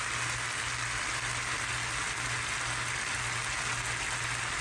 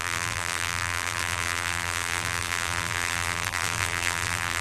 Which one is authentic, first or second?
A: first